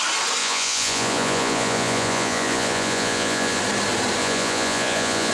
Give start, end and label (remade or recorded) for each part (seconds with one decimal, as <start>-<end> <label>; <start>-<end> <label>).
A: 0.0-0.4 recorded; 0.4-3.6 remade; 3.6-4.2 recorded; 4.2-5.3 remade